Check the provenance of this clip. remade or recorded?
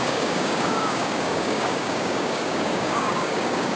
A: remade